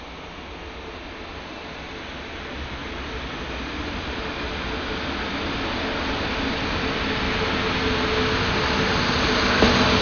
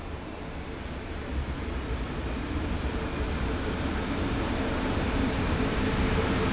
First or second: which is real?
first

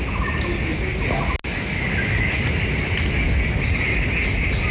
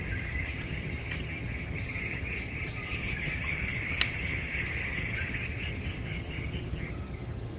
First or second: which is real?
first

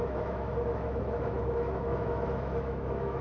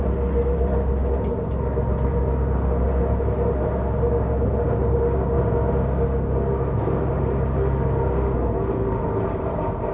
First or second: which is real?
second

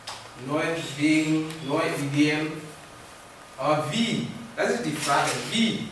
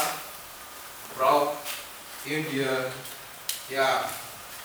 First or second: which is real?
first